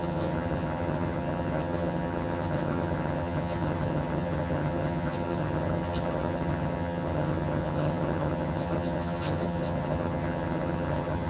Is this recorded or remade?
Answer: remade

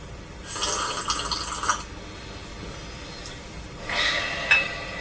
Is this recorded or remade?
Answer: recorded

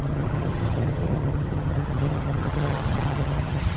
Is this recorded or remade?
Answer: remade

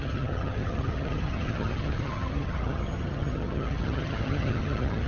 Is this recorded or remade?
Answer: remade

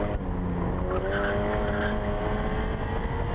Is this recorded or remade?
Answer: recorded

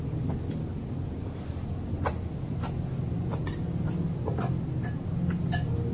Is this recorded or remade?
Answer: recorded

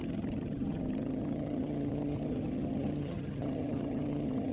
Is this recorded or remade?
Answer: remade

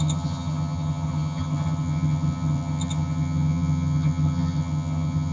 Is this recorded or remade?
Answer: remade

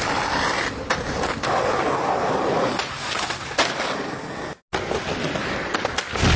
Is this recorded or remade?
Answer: recorded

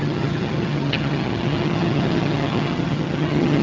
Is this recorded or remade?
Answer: remade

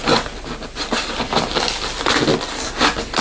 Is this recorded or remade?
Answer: recorded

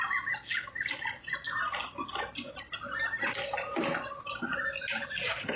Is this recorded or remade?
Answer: recorded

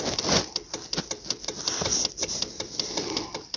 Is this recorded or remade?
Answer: recorded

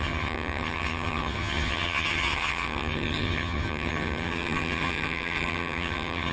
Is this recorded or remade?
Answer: remade